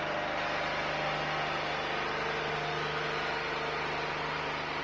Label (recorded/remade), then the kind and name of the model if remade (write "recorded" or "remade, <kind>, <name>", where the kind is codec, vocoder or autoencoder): recorded